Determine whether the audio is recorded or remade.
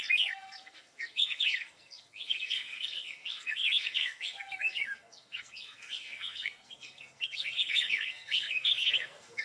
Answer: remade